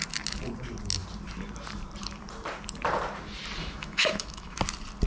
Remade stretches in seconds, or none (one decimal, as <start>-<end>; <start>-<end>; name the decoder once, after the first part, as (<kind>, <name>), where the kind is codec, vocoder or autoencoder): 3.6-4.6 (autoencoder, DAC-VAE)